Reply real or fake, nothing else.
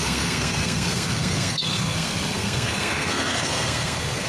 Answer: fake